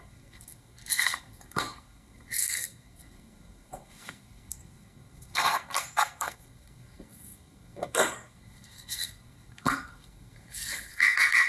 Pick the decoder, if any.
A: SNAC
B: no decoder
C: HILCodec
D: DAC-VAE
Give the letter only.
A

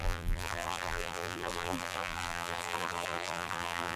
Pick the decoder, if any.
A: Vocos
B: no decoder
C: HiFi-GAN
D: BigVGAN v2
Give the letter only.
D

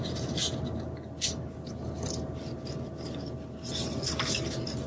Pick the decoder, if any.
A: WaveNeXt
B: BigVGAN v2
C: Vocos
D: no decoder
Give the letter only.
D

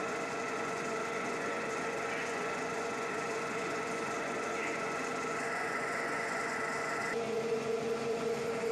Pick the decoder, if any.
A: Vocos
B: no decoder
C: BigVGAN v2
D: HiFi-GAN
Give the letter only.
A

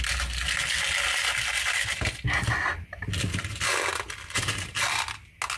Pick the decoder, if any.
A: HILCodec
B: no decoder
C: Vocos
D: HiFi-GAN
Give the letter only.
B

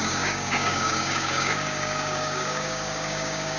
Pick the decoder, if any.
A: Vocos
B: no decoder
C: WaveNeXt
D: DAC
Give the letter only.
D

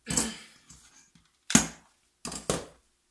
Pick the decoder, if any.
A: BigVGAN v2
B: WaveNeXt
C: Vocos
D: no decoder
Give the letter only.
D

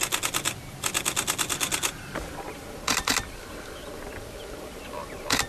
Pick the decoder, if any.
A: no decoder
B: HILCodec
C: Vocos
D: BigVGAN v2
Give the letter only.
A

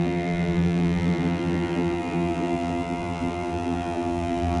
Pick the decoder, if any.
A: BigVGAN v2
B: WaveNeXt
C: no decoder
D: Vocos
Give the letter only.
A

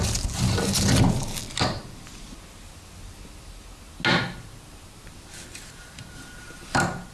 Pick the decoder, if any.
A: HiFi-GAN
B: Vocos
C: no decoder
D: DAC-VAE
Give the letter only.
C